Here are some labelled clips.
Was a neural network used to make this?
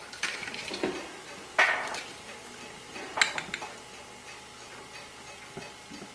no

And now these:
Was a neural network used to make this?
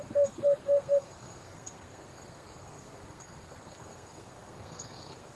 yes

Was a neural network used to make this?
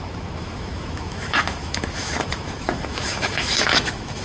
yes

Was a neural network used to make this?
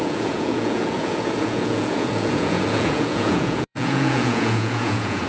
yes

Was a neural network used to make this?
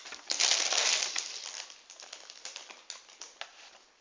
no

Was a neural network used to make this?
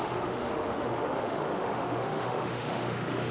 yes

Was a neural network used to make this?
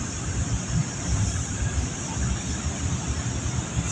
no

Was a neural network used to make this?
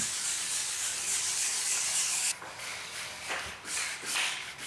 yes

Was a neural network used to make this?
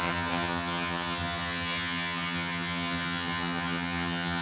yes